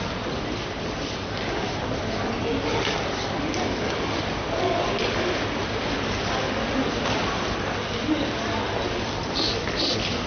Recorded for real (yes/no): yes